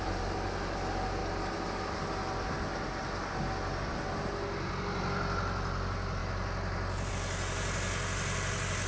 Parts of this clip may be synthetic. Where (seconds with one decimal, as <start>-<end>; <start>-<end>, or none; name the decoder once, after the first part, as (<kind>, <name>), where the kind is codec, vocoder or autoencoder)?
none